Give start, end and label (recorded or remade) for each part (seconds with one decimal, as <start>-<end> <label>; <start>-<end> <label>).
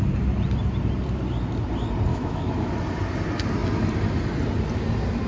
0.0-2.1 recorded; 2.1-2.7 remade; 2.7-5.3 recorded